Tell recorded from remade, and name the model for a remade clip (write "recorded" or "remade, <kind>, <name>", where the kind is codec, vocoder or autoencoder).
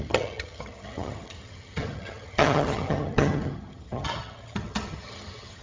remade, vocoder, HiFi-GAN